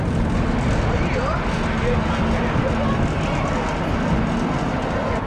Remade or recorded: recorded